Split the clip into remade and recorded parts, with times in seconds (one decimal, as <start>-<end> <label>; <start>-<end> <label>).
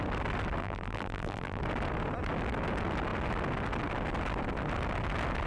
0.0-0.6 recorded; 0.6-1.6 remade; 1.6-5.5 recorded